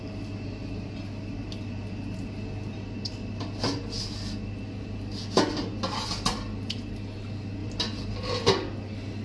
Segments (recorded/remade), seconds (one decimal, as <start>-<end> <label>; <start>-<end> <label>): 0.0-9.2 recorded